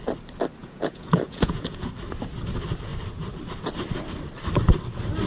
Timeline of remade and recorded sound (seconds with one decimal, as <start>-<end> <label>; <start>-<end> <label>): 0.0-0.6 recorded; 0.6-1.9 remade; 1.9-5.3 recorded